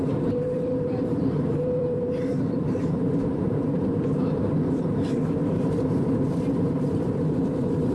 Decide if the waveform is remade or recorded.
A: remade